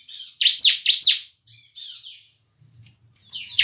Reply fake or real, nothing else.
real